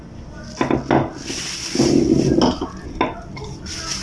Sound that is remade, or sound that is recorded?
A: recorded